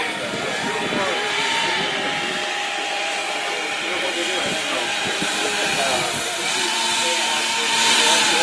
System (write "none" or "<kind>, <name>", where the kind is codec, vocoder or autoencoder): none